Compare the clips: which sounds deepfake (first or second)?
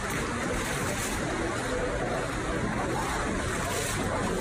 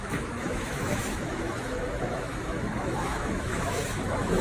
second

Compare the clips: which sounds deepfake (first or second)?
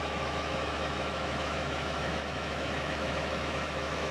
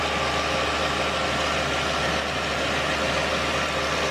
first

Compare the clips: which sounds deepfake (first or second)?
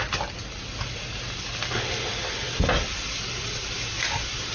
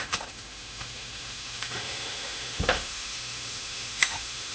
second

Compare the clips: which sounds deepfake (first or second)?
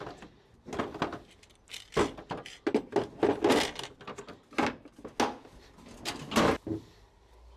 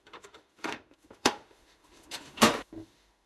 second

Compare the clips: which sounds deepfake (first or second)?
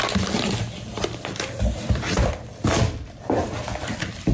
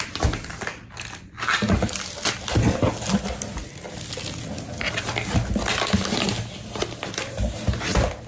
first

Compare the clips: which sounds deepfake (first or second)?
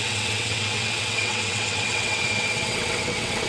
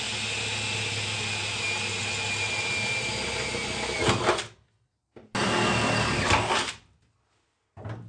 first